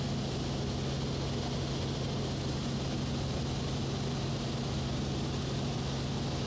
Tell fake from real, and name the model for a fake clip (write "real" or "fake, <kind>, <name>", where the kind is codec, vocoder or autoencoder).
real